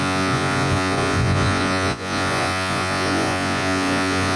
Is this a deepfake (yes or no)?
yes